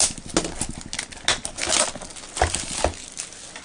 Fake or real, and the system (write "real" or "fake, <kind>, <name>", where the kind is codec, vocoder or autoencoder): real